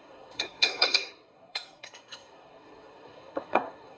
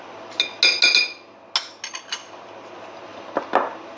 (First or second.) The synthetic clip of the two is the first